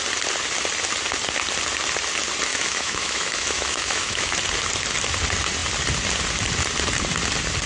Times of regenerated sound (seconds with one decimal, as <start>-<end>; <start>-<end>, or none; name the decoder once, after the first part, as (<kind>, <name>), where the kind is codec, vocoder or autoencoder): 2.5-4.3 (autoencoder, DAC-VAE)